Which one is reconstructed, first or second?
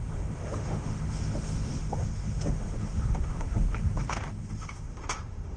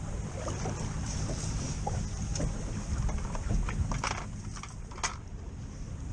first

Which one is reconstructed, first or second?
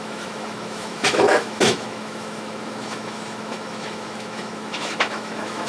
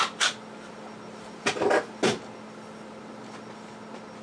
first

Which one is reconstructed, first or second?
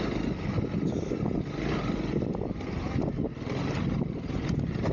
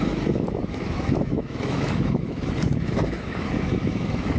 second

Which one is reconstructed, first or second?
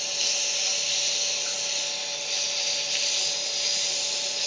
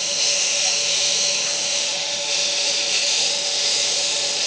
second